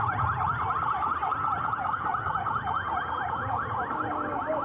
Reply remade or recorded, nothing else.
recorded